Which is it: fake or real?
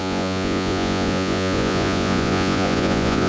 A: fake